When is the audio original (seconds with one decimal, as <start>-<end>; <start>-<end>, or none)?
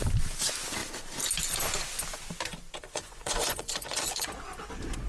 0.0-2.8; 4.3-5.1